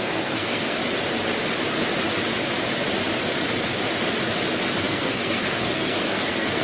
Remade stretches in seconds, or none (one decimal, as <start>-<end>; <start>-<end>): 0.0-0.8; 4.8-6.6